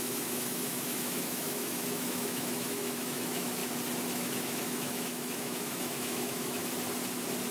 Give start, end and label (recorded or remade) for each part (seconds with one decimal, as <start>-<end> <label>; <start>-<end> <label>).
0.0-3.6 remade; 3.6-4.1 recorded; 4.1-6.6 remade; 6.6-7.5 recorded